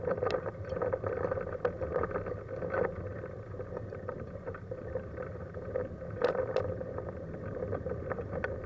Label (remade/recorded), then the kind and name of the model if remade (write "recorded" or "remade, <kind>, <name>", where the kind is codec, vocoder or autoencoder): recorded